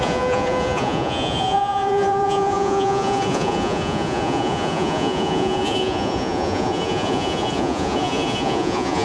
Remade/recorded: remade